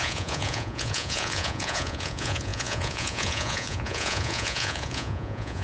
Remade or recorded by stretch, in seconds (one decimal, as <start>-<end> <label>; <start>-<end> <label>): 0.0-5.6 remade